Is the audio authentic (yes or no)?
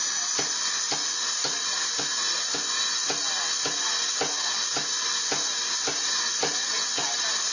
yes